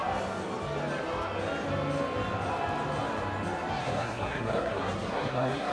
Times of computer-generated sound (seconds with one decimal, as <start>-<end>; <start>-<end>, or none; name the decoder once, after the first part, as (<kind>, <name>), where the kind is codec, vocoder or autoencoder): 3.8-5.7 (codec, SNAC)